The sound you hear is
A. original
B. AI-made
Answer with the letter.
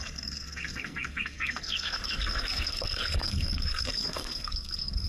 B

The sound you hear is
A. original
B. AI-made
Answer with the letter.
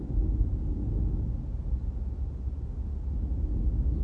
A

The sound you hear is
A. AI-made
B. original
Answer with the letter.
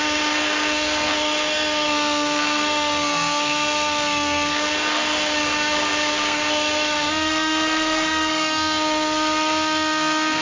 A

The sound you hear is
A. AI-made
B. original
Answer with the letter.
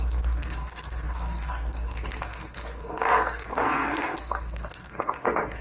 A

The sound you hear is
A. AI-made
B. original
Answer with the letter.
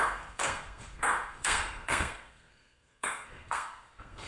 A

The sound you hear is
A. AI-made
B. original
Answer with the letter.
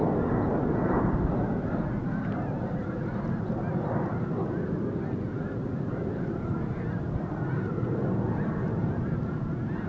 B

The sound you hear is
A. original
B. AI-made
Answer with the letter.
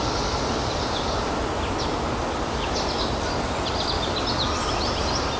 A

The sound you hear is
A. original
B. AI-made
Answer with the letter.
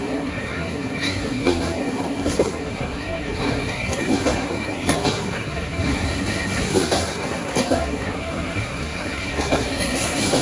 B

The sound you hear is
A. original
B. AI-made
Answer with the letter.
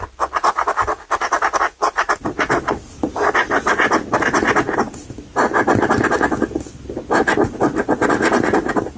A